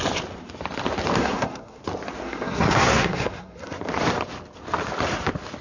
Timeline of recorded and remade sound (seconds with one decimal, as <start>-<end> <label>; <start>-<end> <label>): 0.0-1.2 recorded; 1.2-1.8 remade; 1.8-2.2 recorded; 2.2-3.8 remade; 3.8-5.6 recorded